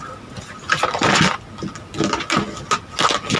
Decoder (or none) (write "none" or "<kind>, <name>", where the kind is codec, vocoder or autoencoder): none